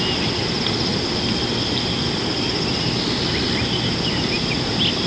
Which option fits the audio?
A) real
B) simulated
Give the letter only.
A